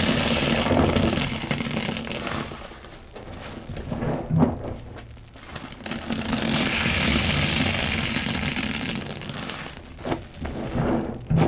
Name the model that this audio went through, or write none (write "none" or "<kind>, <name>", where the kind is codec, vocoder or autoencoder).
none